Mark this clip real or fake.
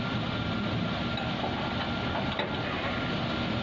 real